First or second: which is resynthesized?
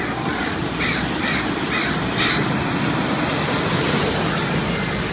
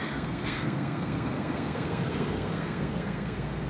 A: second